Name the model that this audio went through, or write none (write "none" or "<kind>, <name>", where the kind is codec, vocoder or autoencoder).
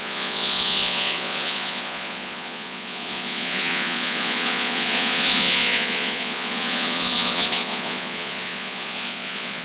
vocoder, Vocos